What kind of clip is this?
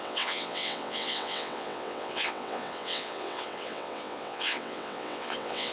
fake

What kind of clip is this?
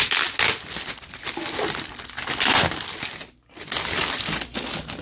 real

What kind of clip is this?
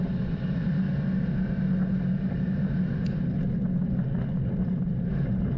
real